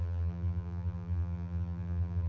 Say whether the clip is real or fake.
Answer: fake